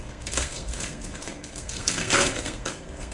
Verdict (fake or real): fake